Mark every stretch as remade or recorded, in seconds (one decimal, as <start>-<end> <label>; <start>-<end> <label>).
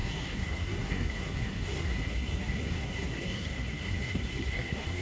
0.0-5.0 remade